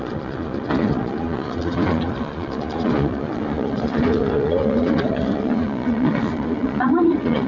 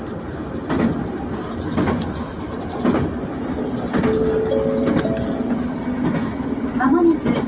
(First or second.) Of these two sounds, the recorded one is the second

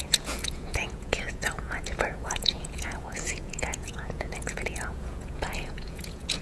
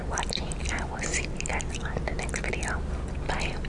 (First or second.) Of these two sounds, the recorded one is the second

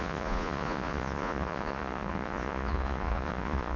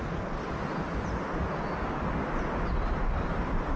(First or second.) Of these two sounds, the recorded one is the second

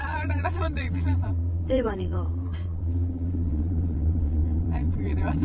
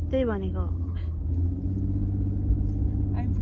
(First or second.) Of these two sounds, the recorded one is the second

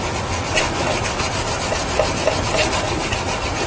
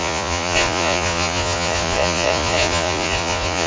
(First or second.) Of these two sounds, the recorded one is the first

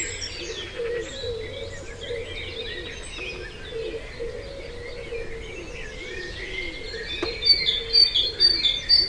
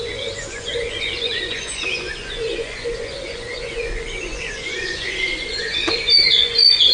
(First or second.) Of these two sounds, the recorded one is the first